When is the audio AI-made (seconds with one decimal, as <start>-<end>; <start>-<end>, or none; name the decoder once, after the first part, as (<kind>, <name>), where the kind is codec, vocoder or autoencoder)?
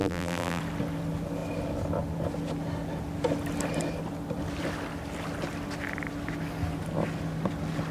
0.0-0.6 (vocoder, BigVGAN v2)